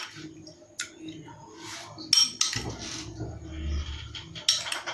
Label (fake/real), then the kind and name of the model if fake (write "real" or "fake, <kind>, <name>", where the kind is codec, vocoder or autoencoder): real